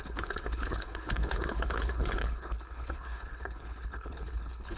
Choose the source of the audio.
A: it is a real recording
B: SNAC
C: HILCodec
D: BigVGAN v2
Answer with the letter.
C